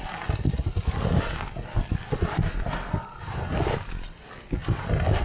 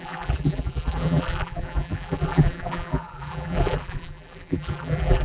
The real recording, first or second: first